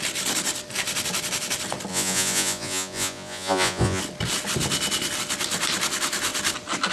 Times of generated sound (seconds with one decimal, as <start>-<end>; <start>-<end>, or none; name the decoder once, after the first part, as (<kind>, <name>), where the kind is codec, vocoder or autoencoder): 1.9-4.0 (vocoder, Vocos)